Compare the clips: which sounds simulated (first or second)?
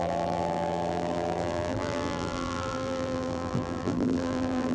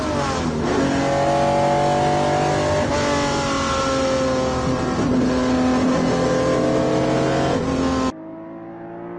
first